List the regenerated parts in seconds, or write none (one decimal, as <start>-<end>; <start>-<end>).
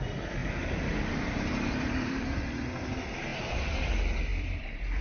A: 0.4-2.4; 3.3-3.9; 4.3-5.0